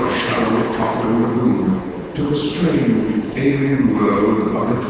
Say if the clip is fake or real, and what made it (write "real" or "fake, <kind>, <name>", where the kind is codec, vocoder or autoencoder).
fake, codec, HILCodec